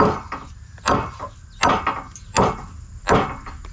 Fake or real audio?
real